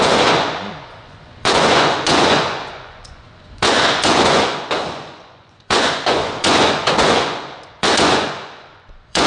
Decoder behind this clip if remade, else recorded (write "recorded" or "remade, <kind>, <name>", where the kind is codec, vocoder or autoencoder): remade, vocoder, Vocos